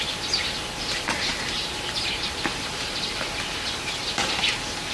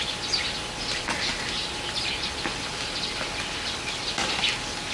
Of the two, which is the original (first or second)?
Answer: second